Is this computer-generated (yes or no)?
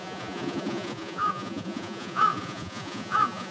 yes